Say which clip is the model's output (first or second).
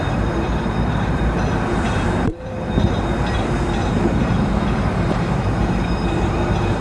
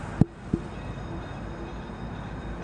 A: first